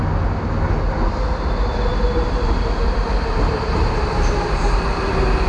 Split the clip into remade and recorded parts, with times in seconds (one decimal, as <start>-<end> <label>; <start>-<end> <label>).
0.0-1.9 recorded; 1.9-5.1 remade; 5.1-5.5 recorded